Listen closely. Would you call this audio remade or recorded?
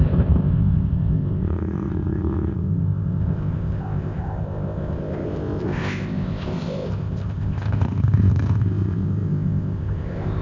remade